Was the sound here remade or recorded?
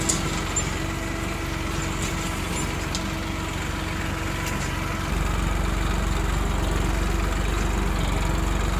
recorded